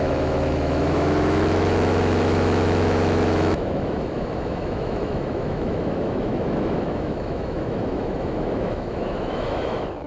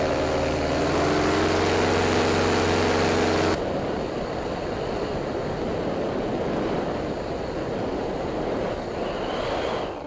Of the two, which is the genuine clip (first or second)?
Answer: second